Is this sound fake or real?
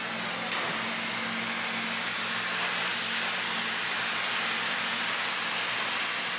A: real